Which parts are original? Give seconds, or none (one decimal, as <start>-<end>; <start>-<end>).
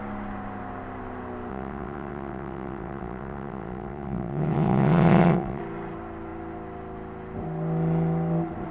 0.0-1.5; 5.6-8.7